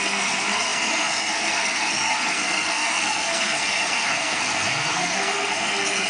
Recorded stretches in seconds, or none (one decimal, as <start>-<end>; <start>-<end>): none